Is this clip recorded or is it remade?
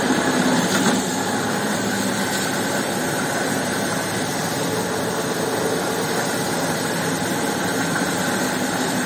remade